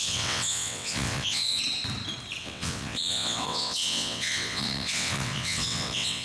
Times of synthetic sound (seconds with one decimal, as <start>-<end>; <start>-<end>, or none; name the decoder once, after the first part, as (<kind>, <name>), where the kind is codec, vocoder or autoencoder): 0.0-1.6 (vocoder, WaveNeXt); 2.4-6.2